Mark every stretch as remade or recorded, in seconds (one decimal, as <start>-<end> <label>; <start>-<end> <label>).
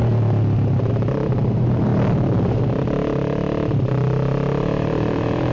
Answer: 0.0-0.9 recorded; 0.9-1.9 remade; 1.9-4.6 recorded; 4.6-5.5 remade